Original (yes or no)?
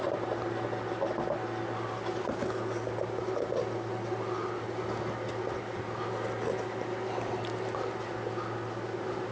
yes